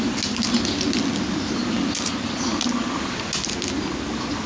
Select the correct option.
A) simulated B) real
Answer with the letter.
B